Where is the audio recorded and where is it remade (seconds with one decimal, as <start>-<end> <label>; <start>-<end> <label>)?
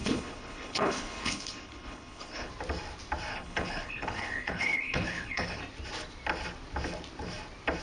0.0-2.5 remade; 2.5-3.3 recorded; 3.3-5.6 remade; 5.6-7.8 recorded